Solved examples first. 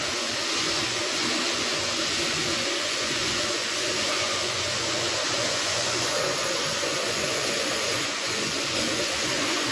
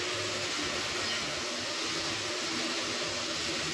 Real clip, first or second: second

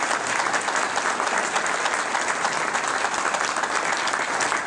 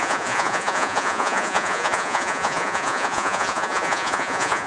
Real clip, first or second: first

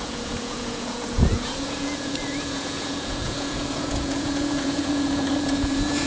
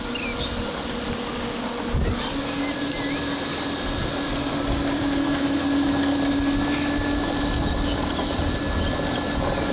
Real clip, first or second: second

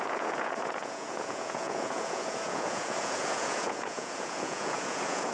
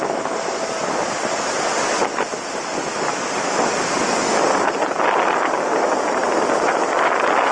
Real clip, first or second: second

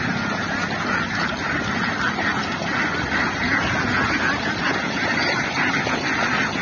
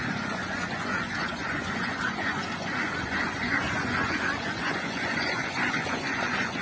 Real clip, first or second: first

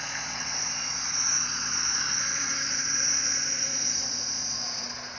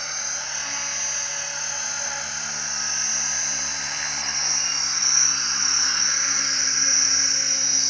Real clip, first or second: second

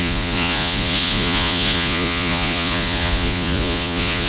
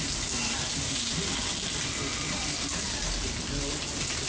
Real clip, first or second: second